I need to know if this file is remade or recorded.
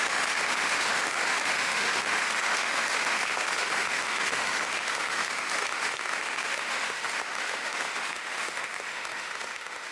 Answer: remade